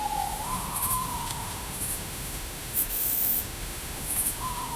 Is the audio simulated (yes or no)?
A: yes